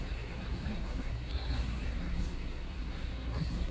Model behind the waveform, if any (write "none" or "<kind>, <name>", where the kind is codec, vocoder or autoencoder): codec, SNAC